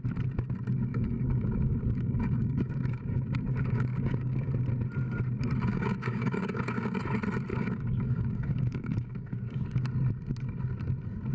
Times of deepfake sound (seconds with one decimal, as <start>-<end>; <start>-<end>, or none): 0.9-4.5; 5.7-7.0; 7.5-9.6